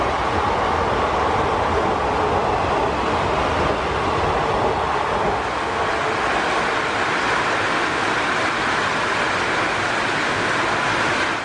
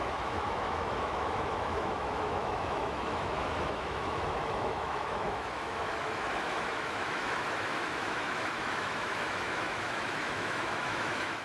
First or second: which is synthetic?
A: second